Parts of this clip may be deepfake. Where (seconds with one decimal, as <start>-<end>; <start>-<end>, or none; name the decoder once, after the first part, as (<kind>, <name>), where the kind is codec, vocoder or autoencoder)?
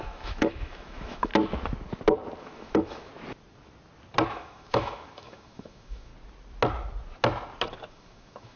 0.0-1.3 (autoencoder, DAC-VAE); 2.4-3.1; 4.3-6.1; 7.9-8.6